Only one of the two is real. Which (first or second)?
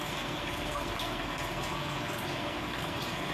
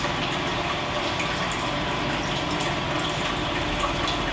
second